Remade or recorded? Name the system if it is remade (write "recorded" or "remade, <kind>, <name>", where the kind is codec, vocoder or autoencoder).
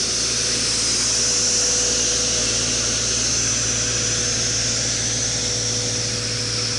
recorded